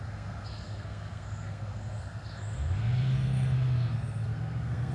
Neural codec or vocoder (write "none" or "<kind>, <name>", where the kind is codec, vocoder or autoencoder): codec, SNAC